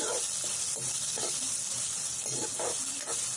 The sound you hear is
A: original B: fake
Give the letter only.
A